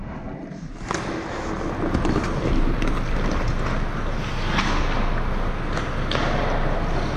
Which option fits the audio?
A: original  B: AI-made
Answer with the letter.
A